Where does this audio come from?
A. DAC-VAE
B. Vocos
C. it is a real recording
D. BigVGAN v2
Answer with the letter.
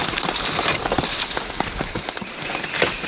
C